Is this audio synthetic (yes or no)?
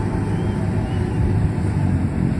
no